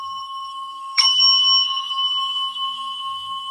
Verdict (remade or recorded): remade